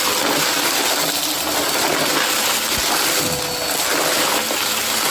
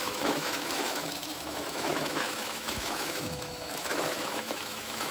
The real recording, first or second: first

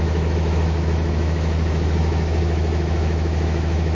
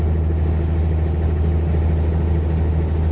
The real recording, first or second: second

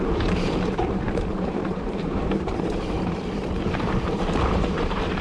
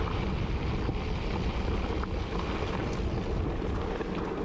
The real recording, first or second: second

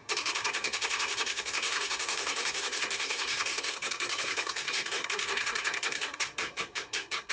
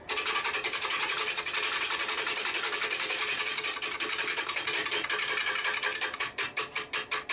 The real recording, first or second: second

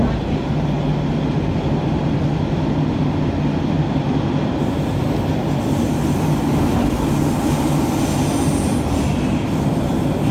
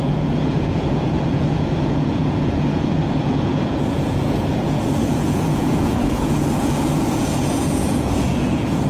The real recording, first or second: first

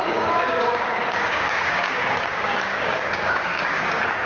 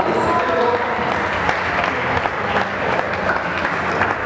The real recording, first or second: second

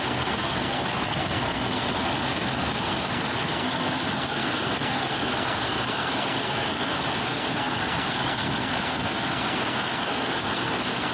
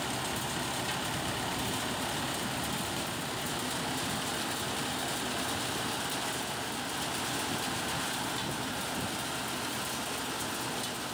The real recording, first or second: second